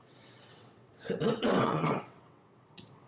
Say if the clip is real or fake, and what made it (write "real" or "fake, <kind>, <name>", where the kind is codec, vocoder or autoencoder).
fake, vocoder, WaveNeXt